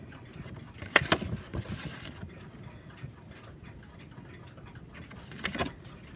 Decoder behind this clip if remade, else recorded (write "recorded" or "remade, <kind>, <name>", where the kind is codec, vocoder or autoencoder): recorded